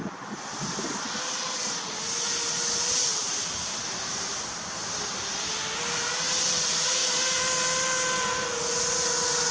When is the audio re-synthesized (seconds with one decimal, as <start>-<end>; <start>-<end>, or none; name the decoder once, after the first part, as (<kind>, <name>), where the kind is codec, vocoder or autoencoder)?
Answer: 3.1-5.5 (vocoder, BigVGAN v2)